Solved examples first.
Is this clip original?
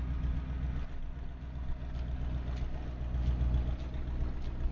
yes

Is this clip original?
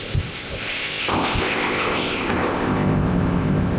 no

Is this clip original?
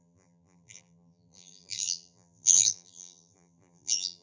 no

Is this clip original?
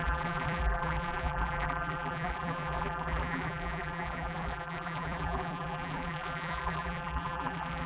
no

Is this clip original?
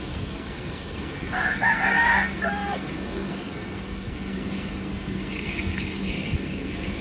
no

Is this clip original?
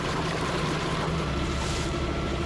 no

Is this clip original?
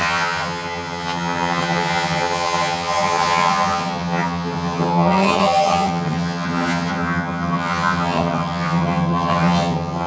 no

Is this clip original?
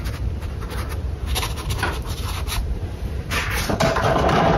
no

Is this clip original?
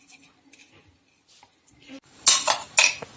yes